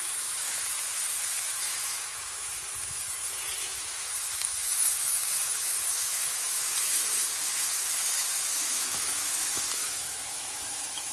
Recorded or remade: remade